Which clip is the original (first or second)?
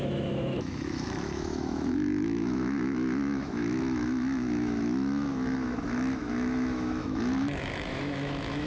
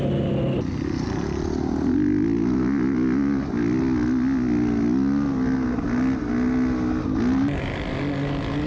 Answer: second